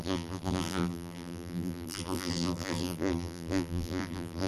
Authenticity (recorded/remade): remade